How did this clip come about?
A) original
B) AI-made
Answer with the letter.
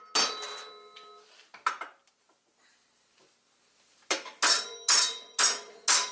A